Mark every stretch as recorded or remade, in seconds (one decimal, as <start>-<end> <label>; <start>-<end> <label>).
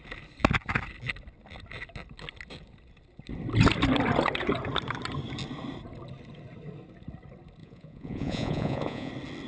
0.0-7.6 recorded; 7.6-9.1 remade; 9.1-9.5 recorded